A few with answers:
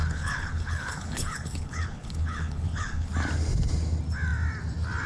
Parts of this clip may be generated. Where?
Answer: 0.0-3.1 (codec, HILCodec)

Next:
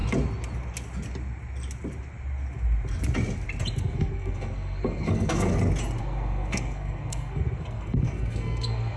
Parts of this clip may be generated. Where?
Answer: 3.8-5.5 (codec, SNAC); 6.0-9.0